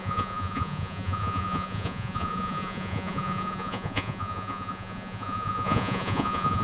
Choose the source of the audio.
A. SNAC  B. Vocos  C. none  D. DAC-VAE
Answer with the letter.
B